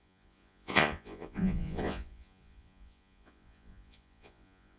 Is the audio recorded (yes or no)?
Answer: no